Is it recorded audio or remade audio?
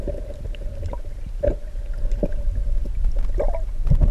recorded